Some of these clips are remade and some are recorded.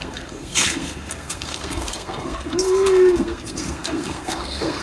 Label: remade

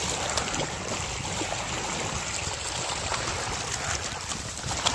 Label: recorded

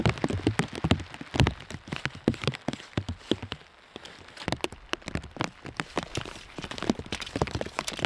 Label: recorded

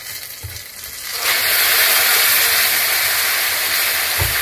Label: recorded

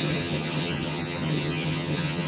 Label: remade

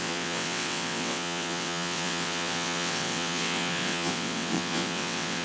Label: remade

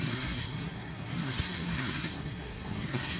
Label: remade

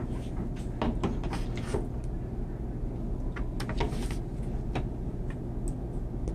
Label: recorded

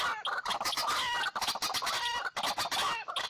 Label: recorded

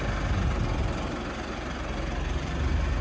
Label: recorded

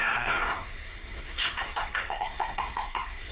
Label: remade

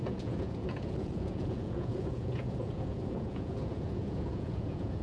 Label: remade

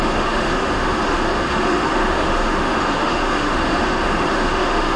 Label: remade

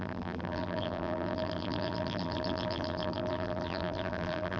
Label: remade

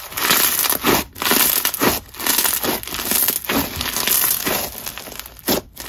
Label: recorded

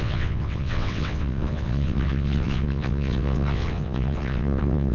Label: remade